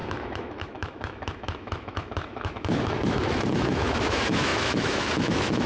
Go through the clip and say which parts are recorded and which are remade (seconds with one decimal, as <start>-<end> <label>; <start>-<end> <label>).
0.0-5.7 remade